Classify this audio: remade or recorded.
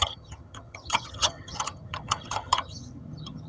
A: remade